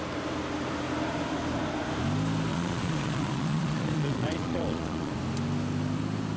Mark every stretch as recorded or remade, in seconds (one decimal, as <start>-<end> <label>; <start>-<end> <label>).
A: 0.0-2.5 recorded; 2.5-5.1 remade; 5.1-6.4 recorded